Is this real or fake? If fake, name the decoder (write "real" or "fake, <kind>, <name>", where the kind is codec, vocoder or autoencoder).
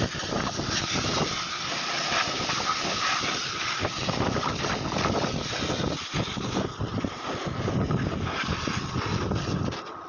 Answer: real